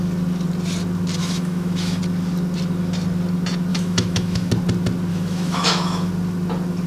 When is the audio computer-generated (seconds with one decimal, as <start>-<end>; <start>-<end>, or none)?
1.2-2.0; 3.7-4.5; 5.1-6.1